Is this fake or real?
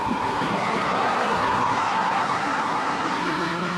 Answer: fake